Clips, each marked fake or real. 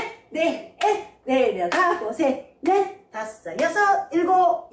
real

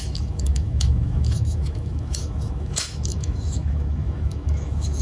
fake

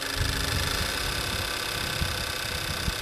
real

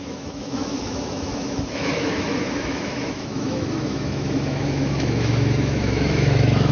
fake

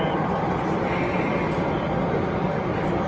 real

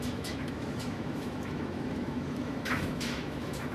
fake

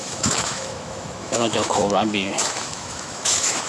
fake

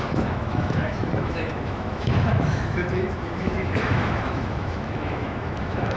fake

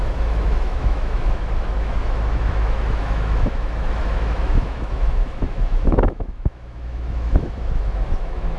fake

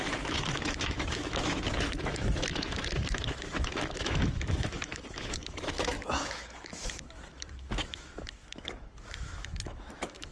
fake